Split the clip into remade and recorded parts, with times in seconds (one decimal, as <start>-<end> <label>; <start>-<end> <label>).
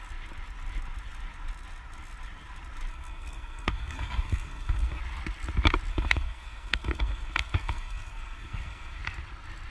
0.0-2.9 recorded; 2.9-5.0 remade; 5.0-5.9 recorded; 5.9-9.0 remade; 9.0-9.7 recorded